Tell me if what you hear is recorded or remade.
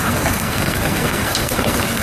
remade